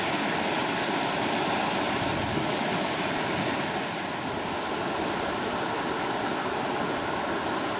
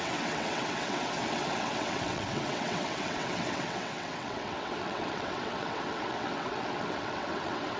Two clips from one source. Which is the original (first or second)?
first